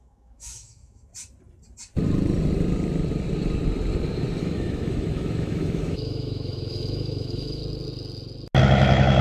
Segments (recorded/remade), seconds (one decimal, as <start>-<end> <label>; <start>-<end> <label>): 0.0-1.1 remade; 1.1-4.4 recorded; 4.4-7.6 remade; 7.6-8.6 recorded; 8.6-9.2 remade